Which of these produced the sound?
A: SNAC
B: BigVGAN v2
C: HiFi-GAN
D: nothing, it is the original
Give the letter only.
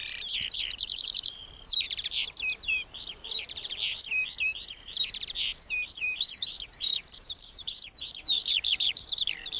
B